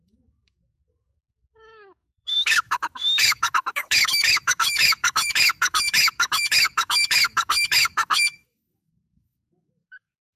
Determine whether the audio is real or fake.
fake